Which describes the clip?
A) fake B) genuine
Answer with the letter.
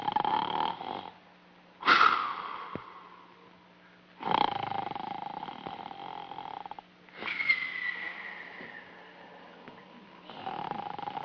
B